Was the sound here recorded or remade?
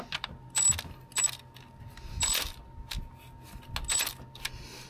recorded